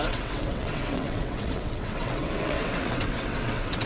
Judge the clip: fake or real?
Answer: fake